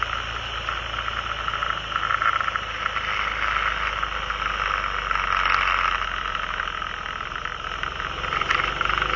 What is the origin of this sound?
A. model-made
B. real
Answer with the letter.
B